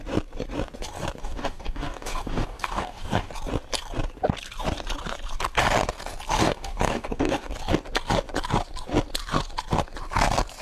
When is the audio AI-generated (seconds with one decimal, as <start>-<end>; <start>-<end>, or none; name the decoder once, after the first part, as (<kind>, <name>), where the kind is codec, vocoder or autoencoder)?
1.2-3.3 (codec, DAC); 6.4-7.5